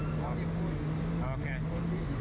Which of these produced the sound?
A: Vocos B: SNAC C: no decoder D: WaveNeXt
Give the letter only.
C